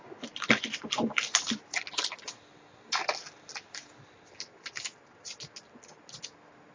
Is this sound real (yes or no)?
yes